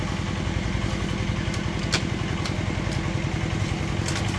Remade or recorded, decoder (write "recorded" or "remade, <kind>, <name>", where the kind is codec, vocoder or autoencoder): recorded